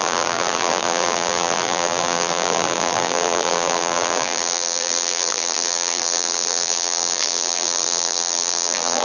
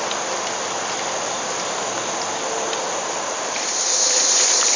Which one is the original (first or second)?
second